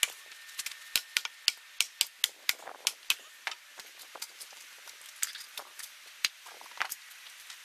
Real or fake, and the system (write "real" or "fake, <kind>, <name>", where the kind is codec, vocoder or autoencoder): real